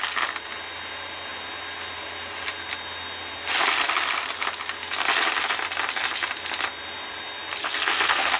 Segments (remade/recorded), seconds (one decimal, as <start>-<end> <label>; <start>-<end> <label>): 0.0-7.6 recorded; 7.6-8.4 remade